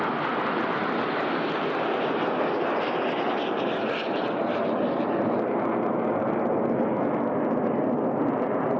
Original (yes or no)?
yes